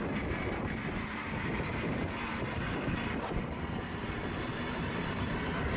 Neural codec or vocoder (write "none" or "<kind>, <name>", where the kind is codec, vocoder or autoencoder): vocoder, BigVGAN v2